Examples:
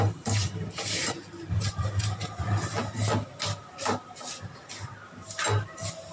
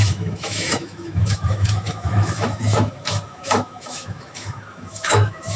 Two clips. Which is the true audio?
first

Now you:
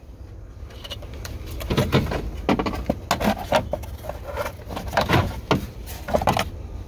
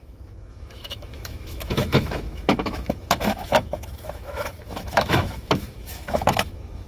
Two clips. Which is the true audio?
first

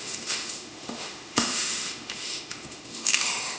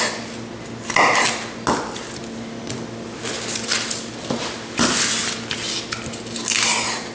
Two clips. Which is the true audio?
second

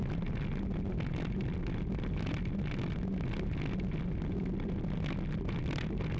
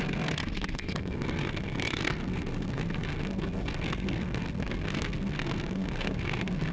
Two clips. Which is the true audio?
first